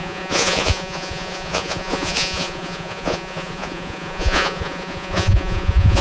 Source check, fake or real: fake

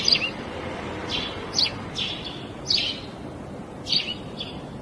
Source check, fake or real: real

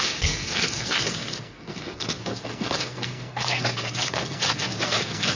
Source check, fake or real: fake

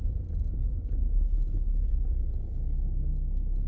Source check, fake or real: real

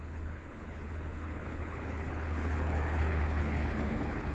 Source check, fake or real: fake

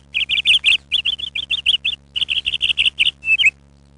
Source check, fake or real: real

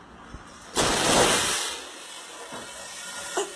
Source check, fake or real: real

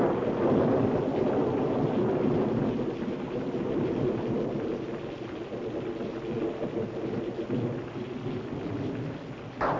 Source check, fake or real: real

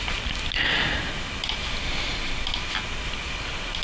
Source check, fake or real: real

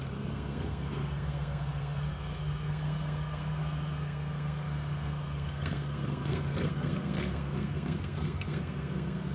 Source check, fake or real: fake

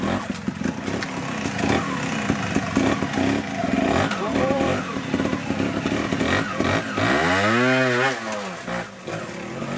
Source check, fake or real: real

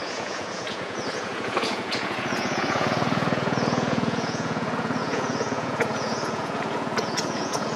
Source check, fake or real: fake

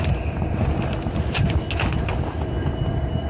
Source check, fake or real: real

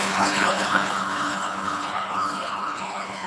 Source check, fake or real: fake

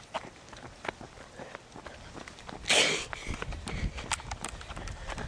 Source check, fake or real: real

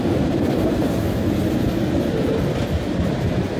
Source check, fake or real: real